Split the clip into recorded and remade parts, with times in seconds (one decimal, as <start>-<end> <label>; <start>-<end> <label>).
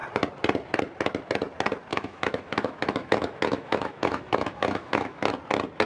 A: 0.0-1.9 recorded; 1.9-5.3 remade; 5.3-5.9 recorded